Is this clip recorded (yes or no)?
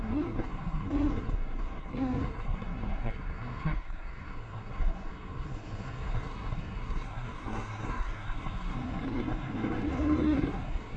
no